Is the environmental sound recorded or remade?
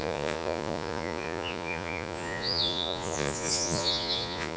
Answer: remade